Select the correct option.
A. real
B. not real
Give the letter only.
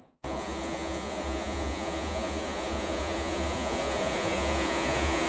B